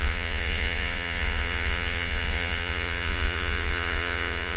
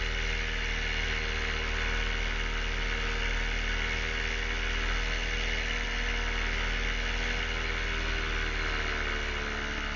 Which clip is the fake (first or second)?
first